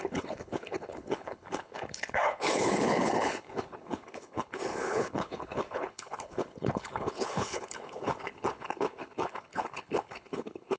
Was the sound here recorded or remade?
remade